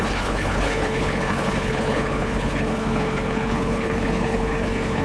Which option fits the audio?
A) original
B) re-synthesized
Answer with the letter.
B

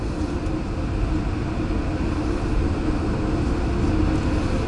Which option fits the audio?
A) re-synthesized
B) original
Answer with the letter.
B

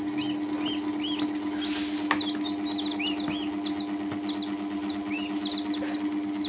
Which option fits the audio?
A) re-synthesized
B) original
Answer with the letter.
B